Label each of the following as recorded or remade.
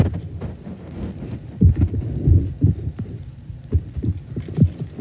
recorded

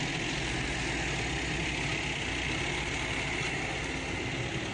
recorded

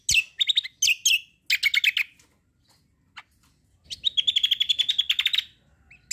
recorded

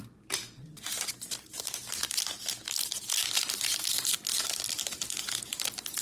remade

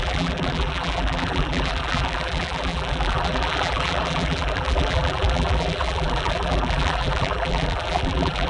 remade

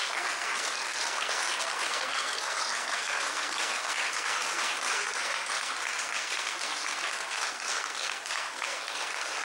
remade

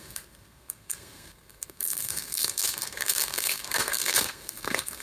remade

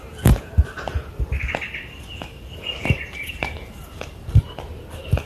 recorded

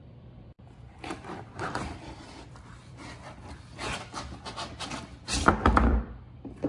remade